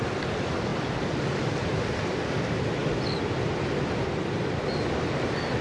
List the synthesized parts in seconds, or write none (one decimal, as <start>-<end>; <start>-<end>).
none